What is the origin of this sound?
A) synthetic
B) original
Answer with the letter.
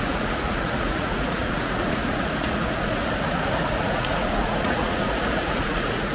A